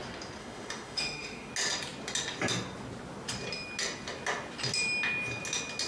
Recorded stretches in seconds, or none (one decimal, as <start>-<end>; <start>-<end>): 0.0-0.4; 1.5-5.9